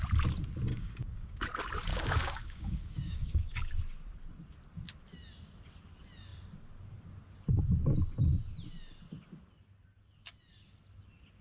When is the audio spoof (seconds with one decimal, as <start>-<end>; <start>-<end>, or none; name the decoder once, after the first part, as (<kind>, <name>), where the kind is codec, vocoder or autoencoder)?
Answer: 0.7-1.3 (codec, DAC); 1.9-3.7